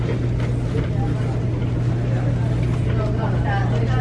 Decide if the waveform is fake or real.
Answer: real